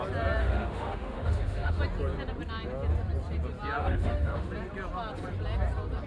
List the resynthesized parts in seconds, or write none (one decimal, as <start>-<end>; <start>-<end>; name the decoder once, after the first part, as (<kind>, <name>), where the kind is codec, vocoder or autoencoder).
0.4-1.8 (autoencoder, DAC-VAE); 3.8-4.5